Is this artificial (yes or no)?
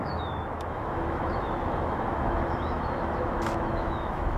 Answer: yes